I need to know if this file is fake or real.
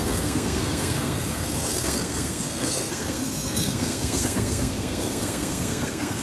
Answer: fake